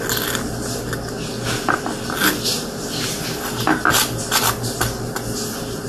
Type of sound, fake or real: real